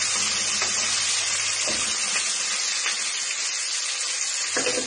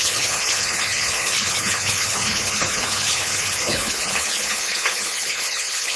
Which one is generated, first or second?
second